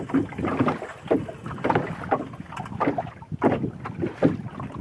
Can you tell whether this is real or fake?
real